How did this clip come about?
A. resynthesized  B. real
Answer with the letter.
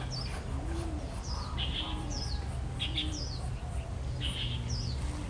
B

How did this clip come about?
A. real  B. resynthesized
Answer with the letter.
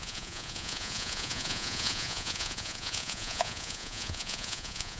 B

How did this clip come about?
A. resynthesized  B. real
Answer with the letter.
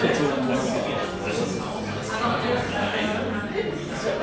B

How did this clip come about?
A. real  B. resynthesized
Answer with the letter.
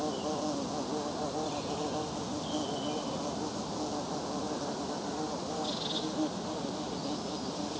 A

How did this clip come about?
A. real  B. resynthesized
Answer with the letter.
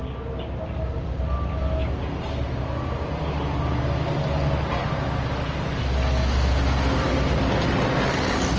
A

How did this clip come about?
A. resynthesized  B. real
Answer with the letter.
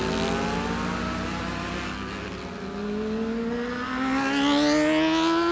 B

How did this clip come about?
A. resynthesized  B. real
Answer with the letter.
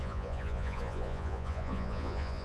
A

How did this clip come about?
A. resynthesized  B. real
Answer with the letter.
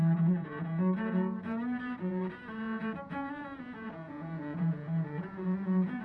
A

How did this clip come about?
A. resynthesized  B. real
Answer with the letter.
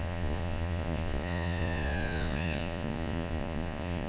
A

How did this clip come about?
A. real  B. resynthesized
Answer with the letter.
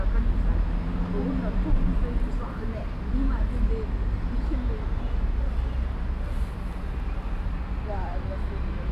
A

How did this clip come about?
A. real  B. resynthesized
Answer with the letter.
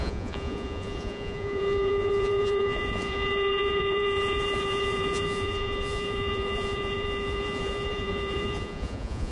B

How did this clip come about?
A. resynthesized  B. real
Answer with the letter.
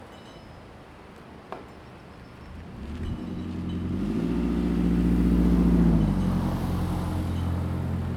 B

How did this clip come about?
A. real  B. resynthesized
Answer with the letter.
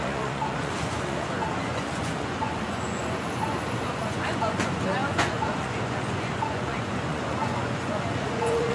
B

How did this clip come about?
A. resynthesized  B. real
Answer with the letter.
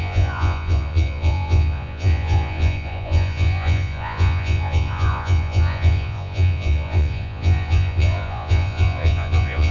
A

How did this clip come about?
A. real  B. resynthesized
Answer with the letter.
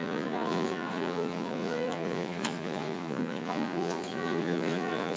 B